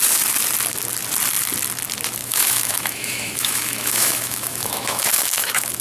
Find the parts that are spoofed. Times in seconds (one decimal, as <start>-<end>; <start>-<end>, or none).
2.2-5.8